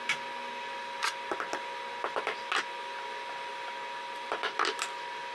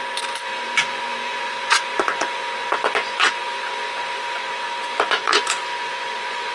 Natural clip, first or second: first